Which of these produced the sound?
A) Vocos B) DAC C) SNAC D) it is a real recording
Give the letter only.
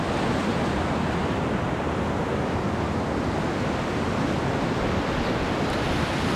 D